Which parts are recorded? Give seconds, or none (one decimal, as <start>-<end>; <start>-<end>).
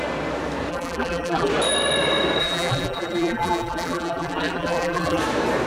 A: 0.0-0.7; 1.5-2.4; 5.2-5.7